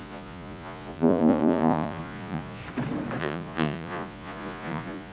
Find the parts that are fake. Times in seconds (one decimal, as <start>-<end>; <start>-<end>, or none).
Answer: 0.0-2.6; 3.2-5.1